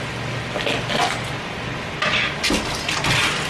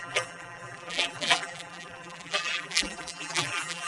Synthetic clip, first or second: second